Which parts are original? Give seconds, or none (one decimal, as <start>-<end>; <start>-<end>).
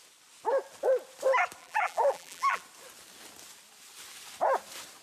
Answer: 0.0-1.6; 2.6-5.0